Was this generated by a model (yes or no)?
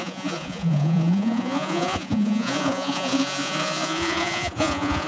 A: yes